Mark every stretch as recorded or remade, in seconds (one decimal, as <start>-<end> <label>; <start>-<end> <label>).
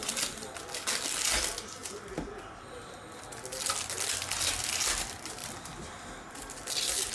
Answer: 0.0-0.6 remade; 0.6-5.4 recorded; 5.4-7.1 remade